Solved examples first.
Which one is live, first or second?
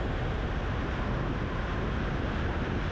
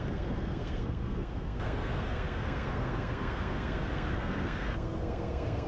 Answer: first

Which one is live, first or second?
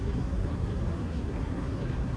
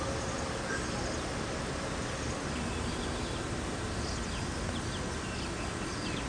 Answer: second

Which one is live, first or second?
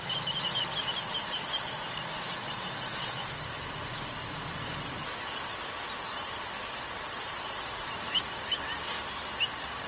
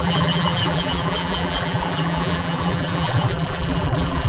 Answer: first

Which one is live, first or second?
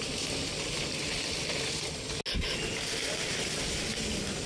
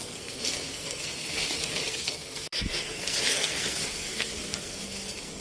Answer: first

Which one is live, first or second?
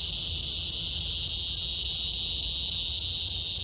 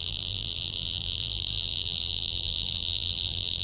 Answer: first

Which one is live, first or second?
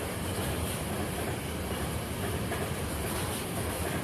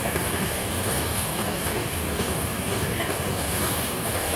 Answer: first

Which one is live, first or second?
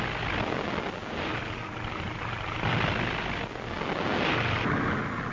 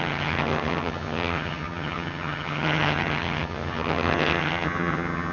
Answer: first